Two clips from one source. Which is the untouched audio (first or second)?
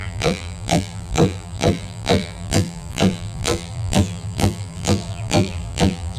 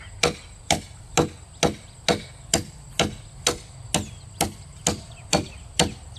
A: second